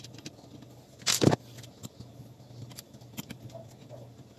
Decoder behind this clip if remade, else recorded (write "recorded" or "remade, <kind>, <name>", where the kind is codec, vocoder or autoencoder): recorded